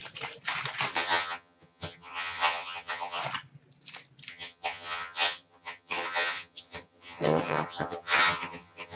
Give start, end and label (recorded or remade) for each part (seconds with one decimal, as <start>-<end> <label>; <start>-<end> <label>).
0.0-0.9 recorded; 0.9-3.2 remade; 3.2-4.3 recorded; 4.3-9.0 remade